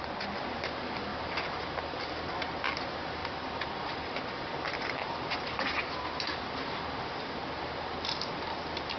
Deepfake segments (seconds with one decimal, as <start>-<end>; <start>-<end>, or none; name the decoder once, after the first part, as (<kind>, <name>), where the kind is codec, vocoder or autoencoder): 1.1-2.5 (vocoder, BigVGAN v2); 3.2-7.4